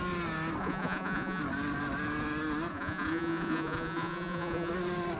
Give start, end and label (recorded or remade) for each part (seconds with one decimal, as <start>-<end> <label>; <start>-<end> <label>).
0.0-0.6 recorded; 0.6-1.4 remade; 1.4-2.7 recorded; 2.7-4.7 remade; 4.7-5.2 recorded